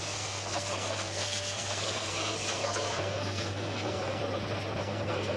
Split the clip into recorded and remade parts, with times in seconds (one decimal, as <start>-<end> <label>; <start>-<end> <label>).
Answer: 0.0-4.2 remade; 4.2-4.8 recorded; 4.8-5.4 remade

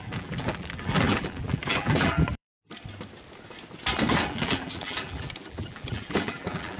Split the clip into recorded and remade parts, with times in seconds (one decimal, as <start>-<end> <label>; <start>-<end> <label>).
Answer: 0.0-2.5 remade; 2.5-4.2 recorded; 4.2-6.8 remade

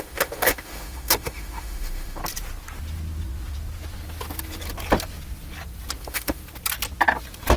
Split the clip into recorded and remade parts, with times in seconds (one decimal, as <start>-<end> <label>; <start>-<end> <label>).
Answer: 0.0-2.2 remade; 2.2-6.0 recorded; 6.0-6.4 remade; 6.4-7.6 recorded

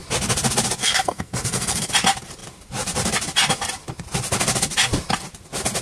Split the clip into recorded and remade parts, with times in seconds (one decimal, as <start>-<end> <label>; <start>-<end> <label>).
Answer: 0.0-0.8 recorded; 0.8-1.9 remade; 1.9-5.8 recorded

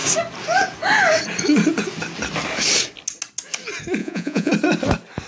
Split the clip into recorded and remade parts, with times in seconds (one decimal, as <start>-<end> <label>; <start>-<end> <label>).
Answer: 0.0-4.0 recorded; 4.0-4.5 remade; 4.5-5.3 recorded

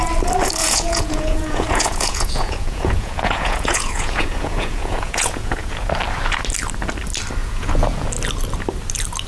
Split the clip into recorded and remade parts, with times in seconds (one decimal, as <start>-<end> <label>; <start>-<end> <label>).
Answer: 0.0-0.6 recorded; 0.6-5.9 remade; 5.9-7.4 recorded; 7.4-8.1 remade; 8.1-9.3 recorded

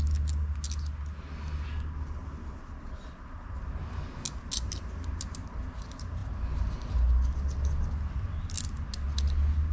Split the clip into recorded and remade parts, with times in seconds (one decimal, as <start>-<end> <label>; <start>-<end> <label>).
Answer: 0.0-9.7 recorded